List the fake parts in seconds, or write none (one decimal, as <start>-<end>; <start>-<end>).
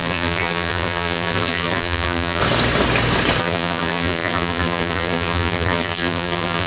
0.0-2.4; 3.4-6.7